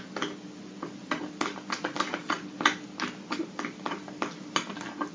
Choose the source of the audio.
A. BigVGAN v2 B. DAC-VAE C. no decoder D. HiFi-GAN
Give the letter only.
C